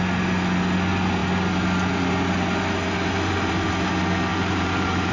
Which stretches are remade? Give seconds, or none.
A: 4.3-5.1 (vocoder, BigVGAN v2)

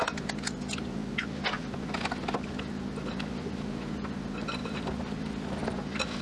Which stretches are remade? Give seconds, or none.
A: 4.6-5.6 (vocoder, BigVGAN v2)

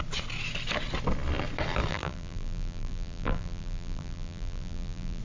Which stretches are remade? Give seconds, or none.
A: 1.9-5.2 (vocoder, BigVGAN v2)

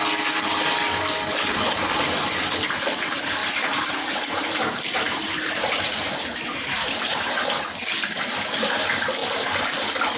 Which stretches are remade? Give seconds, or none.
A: 3.4-7.3 (vocoder, BigVGAN v2)

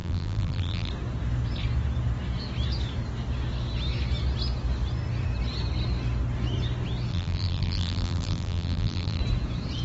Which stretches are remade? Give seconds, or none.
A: 0.0-0.9 (vocoder, BigVGAN v2); 7.1-9.2